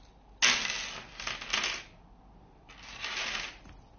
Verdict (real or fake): real